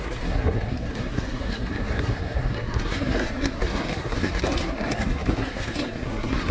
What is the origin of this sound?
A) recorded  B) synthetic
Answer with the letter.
B